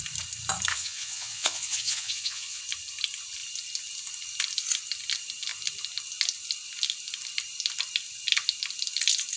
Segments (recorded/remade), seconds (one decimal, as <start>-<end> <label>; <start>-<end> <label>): 0.0-0.7 recorded; 0.7-2.6 remade; 2.6-9.4 recorded